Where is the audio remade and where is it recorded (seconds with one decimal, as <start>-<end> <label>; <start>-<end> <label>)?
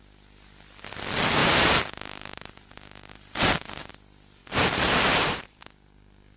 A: 0.0-1.4 recorded; 1.4-3.9 remade; 3.9-4.4 recorded; 4.4-5.6 remade; 5.6-6.4 recorded